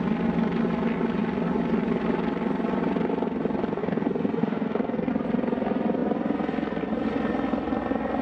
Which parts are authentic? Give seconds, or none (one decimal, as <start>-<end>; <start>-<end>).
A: 0.0-3.8; 5.1-8.2